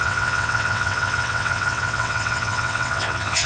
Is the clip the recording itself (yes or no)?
no